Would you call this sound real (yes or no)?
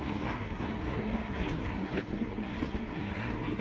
no